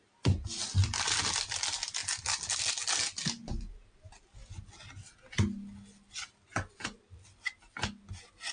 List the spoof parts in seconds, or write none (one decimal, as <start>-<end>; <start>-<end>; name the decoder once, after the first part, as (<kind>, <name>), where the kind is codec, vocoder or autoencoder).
none